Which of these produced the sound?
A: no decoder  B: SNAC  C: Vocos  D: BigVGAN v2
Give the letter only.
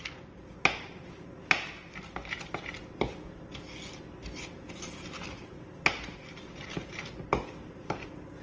A